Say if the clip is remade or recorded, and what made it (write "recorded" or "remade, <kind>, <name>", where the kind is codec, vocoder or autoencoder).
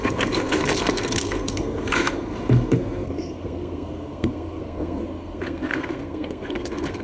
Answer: remade, codec, SNAC